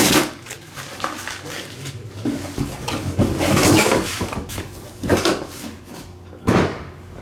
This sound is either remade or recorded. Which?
remade